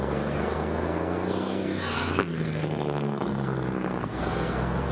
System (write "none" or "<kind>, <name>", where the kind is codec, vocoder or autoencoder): codec, SNAC